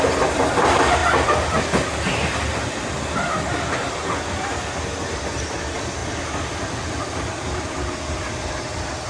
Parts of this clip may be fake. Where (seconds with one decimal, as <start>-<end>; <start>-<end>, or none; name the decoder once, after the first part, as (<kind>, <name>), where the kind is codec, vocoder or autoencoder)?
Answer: none